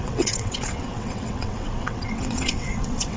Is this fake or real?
fake